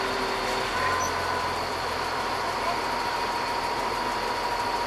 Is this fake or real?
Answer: real